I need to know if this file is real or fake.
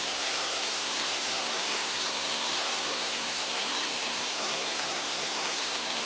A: fake